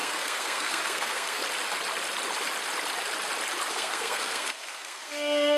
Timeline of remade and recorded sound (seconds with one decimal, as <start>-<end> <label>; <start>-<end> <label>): 0.0-1.4 remade; 1.4-3.7 recorded; 3.7-5.6 remade